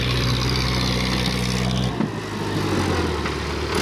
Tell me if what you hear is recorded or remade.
recorded